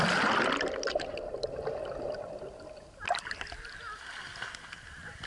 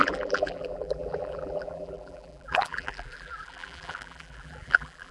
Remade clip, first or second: second